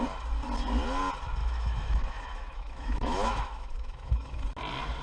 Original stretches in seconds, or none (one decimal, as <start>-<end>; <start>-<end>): 0.0-1.4; 4.4-5.0